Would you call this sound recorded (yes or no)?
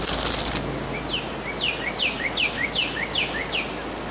yes